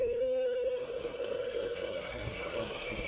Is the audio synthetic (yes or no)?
yes